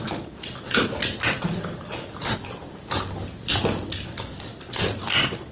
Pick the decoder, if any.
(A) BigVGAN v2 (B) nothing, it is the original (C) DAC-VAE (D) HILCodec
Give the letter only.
B